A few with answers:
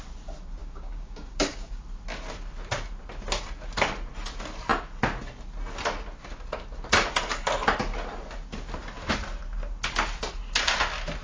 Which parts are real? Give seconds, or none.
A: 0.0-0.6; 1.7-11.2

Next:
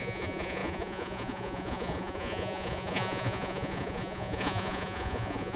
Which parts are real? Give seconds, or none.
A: none

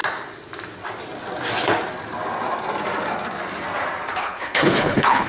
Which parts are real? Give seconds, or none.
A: 0.0-4.2

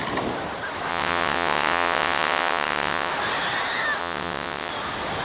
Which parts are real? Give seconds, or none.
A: 0.0-0.9; 3.1-4.0; 4.7-5.2

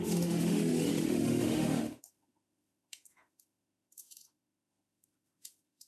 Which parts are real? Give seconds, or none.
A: none

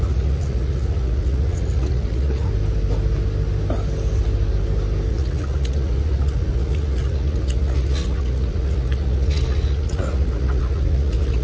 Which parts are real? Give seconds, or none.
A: 2.5-5.1